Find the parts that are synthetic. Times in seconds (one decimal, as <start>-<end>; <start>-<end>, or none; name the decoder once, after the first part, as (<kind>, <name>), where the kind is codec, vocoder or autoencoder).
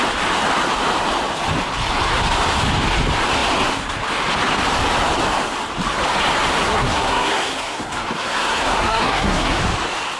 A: 6.6-9.6 (codec, SNAC)